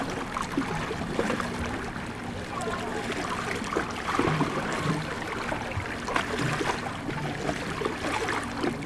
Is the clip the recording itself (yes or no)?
yes